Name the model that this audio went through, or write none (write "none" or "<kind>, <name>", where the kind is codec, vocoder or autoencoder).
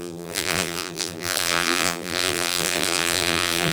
vocoder, BigVGAN v2